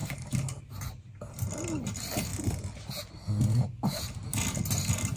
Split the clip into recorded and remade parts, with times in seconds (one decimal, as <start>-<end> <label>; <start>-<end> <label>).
0.0-0.6 remade; 0.6-3.5 recorded; 3.5-4.0 remade; 4.0-5.2 recorded